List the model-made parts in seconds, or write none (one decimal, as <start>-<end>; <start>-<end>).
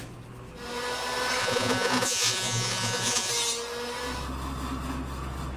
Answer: 1.4-3.3